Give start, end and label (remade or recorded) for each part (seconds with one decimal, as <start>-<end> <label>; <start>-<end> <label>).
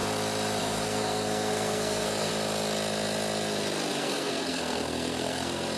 0.0-0.6 recorded; 0.6-2.3 remade; 2.3-3.9 recorded; 3.9-5.8 remade